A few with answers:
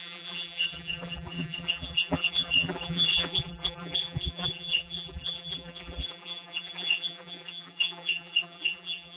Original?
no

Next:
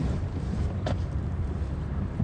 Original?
no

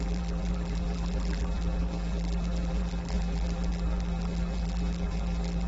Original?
no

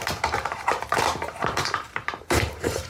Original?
no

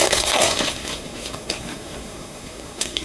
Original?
no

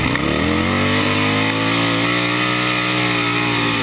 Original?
yes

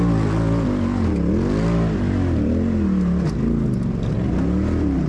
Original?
yes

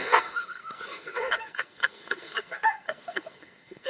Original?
no